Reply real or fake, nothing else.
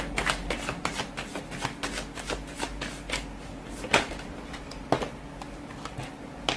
real